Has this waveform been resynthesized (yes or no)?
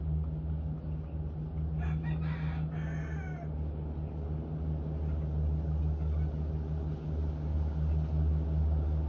no